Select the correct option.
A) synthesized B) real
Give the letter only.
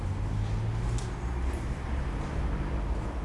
B